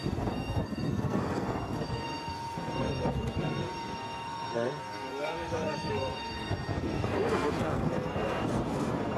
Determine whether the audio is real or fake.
fake